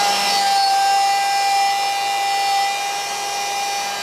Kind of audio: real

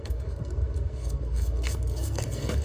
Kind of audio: fake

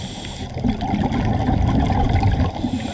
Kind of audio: real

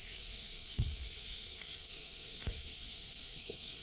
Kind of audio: fake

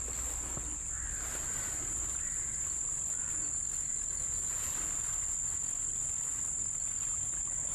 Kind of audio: real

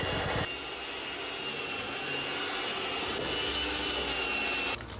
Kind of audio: real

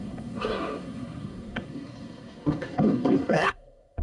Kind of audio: fake